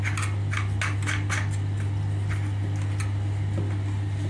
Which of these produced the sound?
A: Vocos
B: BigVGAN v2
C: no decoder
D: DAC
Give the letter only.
C